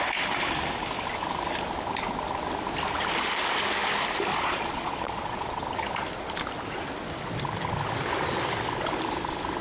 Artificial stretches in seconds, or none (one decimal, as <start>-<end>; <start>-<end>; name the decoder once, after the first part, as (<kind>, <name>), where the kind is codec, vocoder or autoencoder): 4.3-5.6 (vocoder, Vocos)